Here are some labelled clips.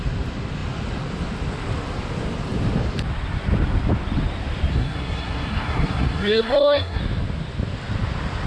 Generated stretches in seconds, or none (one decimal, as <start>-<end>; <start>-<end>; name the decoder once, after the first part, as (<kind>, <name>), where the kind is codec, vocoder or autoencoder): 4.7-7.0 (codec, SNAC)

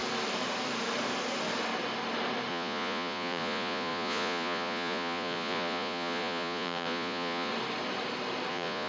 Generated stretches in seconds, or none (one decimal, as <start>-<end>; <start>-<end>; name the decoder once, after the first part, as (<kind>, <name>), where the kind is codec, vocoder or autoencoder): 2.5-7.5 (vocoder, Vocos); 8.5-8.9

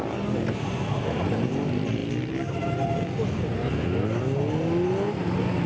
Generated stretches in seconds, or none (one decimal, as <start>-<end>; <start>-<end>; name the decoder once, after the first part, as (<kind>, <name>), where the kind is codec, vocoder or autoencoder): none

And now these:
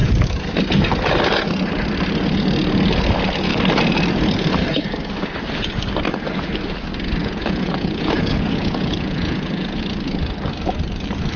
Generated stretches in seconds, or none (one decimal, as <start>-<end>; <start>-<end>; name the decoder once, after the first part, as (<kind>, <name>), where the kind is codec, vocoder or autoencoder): 7.2-9.8 (vocoder, Vocos)

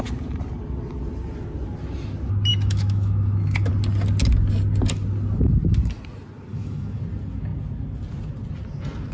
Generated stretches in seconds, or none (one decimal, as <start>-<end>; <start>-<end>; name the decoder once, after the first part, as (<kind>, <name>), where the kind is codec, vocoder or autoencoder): 2.5-3.7 (autoencoder, DAC-VAE); 6.5-7.0